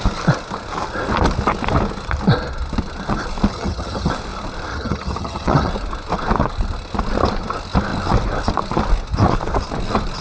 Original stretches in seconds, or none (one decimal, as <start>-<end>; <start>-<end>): 0.0-3.5; 4.1-4.7; 5.7-10.2